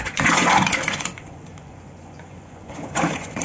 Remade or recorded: remade